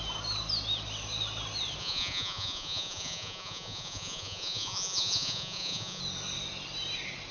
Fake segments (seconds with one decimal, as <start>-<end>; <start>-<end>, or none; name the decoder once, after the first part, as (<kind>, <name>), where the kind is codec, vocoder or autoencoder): 1.8-6.0 (vocoder, Vocos)